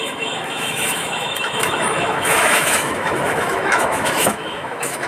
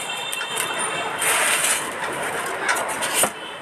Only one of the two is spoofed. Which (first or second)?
first